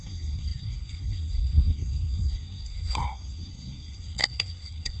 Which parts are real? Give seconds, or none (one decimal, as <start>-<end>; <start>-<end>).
none